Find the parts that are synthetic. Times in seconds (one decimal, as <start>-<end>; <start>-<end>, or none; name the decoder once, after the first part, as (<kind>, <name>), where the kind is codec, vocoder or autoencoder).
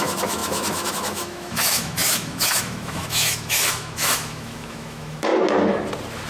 0.0-5.3 (autoencoder, DAC-VAE)